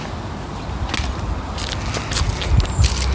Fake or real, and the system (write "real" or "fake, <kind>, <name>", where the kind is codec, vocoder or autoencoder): real